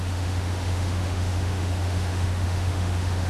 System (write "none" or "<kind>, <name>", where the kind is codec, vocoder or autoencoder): autoencoder, DAC-VAE